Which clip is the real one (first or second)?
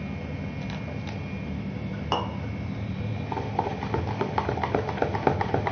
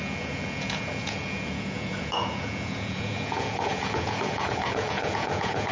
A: first